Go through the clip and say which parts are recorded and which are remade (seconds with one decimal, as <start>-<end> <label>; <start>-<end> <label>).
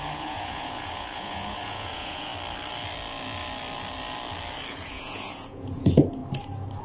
0.0-2.3 remade; 2.3-4.7 recorded; 4.7-6.2 remade; 6.2-6.8 recorded